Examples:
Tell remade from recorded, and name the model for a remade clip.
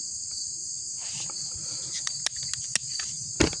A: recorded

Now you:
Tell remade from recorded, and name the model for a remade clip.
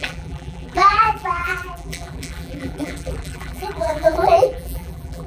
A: remade, vocoder, BigVGAN v2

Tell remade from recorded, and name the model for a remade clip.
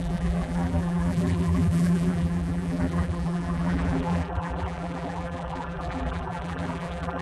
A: remade, vocoder, BigVGAN v2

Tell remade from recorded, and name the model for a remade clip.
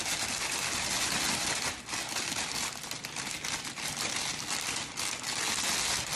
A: recorded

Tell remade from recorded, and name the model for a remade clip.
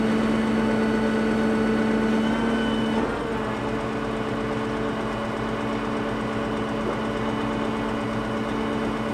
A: recorded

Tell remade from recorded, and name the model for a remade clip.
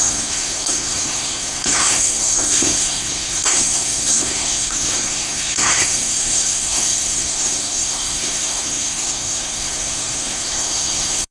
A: remade, codec, SNAC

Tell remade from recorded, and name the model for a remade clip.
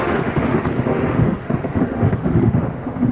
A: remade, autoencoder, DAC-VAE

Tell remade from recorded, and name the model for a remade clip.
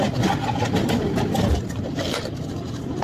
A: recorded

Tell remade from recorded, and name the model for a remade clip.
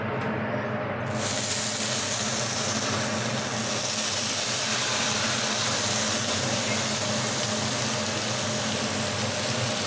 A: recorded